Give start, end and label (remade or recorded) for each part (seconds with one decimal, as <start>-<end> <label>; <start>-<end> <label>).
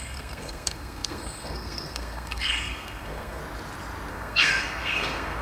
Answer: 0.0-3.4 remade; 3.4-4.1 recorded; 4.1-5.4 remade